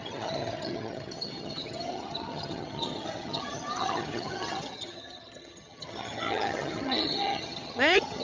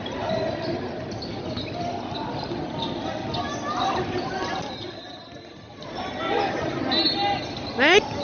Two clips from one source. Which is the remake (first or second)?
first